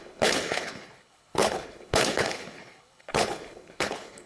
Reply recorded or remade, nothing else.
remade